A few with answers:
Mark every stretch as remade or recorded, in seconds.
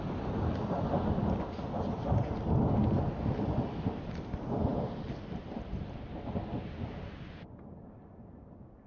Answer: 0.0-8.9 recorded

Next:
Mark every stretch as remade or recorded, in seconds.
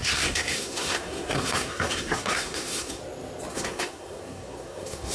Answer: 0.0-3.0 remade; 3.0-3.5 recorded; 3.5-5.1 remade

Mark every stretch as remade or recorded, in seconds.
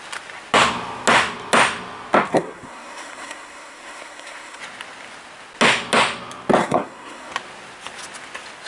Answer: 0.0-2.3 recorded; 2.3-4.6 remade; 4.6-6.6 recorded; 6.6-7.3 remade; 7.3-8.7 recorded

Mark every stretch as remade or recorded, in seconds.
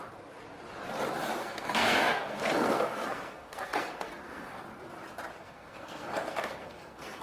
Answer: 0.0-1.4 recorded; 1.4-4.6 remade; 4.6-5.4 recorded; 5.4-7.2 remade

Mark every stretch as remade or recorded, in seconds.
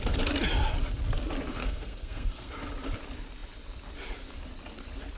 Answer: 0.0-1.6 recorded; 1.6-2.5 remade; 2.5-5.2 recorded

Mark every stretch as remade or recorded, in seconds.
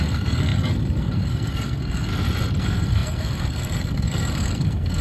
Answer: 0.0-2.1 remade; 2.1-2.6 recorded; 2.6-5.0 remade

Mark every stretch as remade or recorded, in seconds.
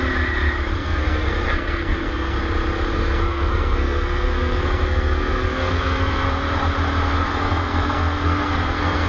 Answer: 0.0-0.8 recorded; 0.8-2.4 remade; 2.4-2.9 recorded; 2.9-6.3 remade; 6.3-7.1 recorded; 7.1-9.1 remade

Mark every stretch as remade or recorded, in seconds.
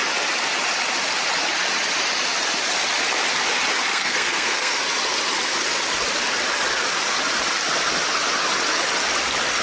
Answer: 0.0-3.9 recorded; 3.9-4.8 remade; 4.8-9.6 recorded